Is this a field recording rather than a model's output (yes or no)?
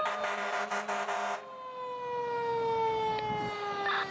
yes